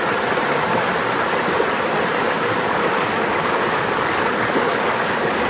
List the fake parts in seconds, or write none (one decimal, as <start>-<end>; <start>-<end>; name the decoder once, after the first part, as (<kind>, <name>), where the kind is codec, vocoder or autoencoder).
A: 2.2-5.5 (codec, DAC)